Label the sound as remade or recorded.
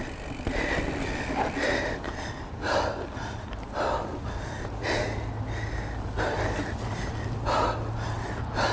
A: recorded